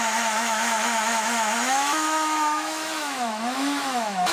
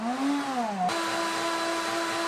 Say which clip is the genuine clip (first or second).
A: second